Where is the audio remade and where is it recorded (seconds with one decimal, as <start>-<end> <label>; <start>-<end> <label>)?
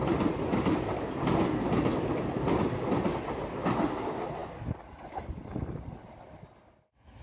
0.0-1.9 recorded; 1.9-2.6 remade; 2.6-4.4 recorded; 4.4-5.9 remade; 5.9-7.2 recorded